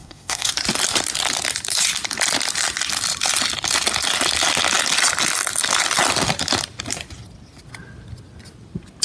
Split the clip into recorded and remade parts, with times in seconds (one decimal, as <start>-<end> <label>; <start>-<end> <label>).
0.0-0.5 remade; 0.5-9.0 recorded